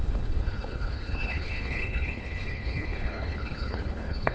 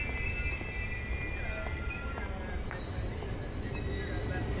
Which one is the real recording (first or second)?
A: second